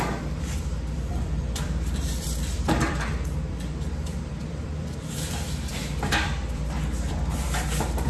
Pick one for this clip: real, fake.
fake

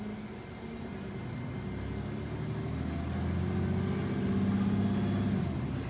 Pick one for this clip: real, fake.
real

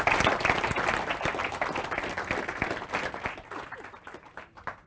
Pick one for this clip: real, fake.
real